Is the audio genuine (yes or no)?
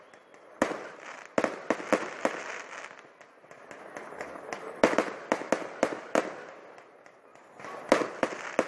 yes